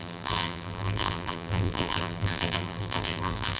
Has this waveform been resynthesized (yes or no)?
yes